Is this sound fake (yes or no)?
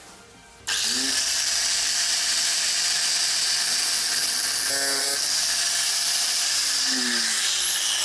no